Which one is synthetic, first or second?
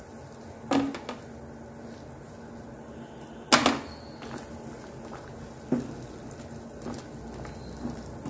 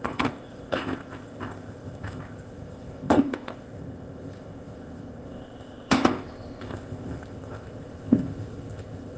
second